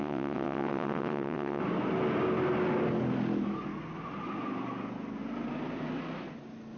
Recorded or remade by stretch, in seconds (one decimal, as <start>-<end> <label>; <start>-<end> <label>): 0.0-1.6 remade; 1.6-6.8 recorded